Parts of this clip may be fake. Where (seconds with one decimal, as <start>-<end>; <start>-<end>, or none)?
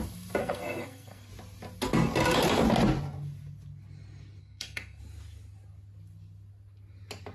0.4-1.3; 4.4-5.0